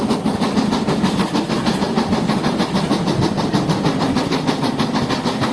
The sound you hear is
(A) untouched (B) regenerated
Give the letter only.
A